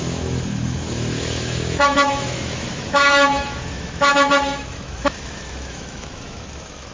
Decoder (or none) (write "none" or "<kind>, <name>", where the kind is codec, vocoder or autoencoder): autoencoder, DAC-VAE